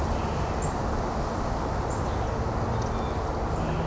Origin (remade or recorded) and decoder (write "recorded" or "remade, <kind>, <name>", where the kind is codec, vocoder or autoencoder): recorded